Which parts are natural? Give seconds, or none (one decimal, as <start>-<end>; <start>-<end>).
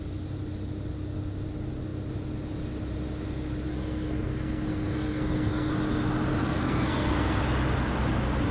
0.0-3.7; 5.7-6.4; 7.4-8.5